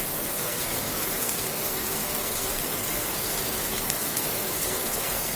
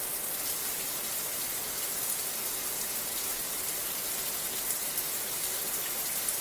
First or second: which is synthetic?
first